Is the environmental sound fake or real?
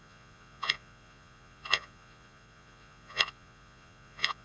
fake